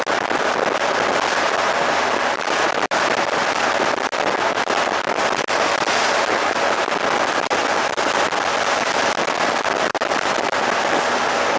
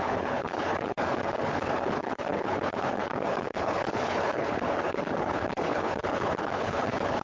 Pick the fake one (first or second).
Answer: second